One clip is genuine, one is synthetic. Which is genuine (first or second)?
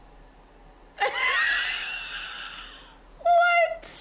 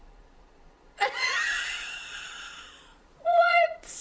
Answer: first